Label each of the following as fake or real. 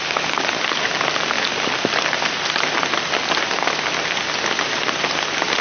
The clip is real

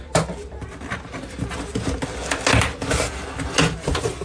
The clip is real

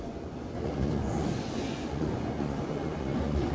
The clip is fake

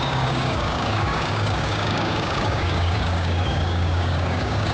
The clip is fake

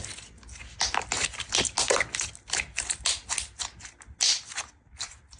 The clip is real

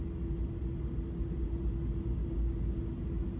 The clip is real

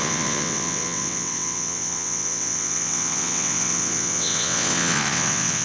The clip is fake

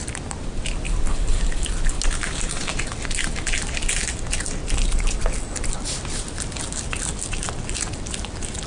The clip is real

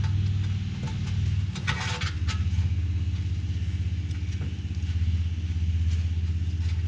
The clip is real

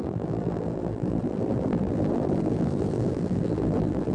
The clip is fake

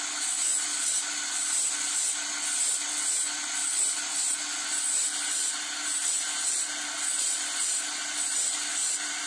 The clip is real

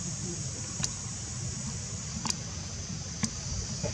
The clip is real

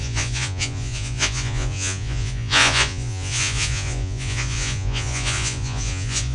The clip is fake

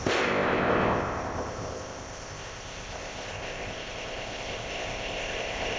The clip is fake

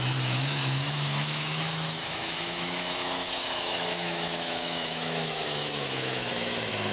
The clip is fake